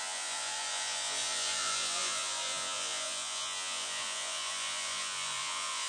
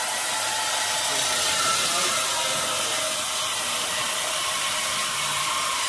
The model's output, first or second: first